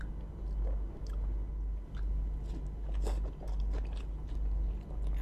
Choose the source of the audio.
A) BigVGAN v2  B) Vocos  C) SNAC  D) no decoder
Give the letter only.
D